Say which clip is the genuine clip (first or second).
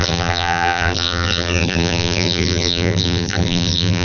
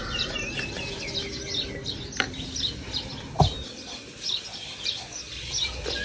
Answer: second